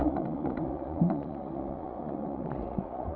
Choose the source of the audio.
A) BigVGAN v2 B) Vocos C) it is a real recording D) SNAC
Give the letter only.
B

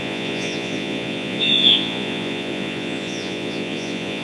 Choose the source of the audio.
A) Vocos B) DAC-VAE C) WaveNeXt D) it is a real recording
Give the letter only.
A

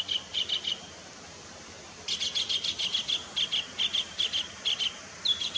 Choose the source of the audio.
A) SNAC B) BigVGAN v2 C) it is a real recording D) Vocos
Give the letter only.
C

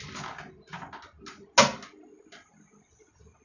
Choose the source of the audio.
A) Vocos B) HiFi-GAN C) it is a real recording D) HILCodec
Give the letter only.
C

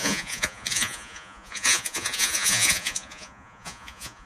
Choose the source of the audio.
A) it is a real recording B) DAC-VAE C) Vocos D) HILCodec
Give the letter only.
C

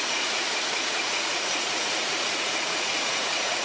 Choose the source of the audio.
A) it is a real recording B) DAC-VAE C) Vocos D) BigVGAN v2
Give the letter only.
C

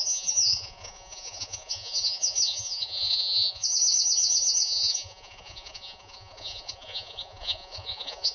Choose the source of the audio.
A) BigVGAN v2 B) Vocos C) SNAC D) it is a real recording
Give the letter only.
B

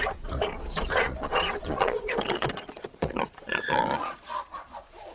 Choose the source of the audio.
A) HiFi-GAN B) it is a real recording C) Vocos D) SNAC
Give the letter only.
C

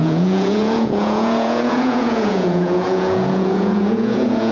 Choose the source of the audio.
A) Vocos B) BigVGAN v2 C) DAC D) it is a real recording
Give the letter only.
A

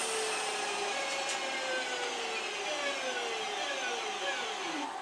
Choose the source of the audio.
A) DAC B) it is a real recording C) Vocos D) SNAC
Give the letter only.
B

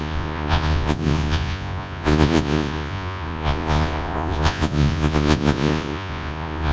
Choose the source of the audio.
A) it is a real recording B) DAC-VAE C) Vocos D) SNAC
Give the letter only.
C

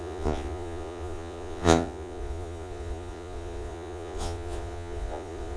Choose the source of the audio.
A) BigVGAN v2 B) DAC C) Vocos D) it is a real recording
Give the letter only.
C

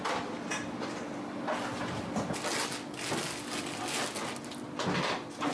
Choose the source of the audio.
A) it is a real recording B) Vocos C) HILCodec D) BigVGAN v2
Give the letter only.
A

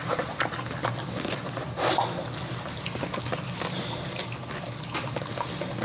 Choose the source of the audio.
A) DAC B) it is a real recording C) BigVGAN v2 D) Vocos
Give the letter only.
B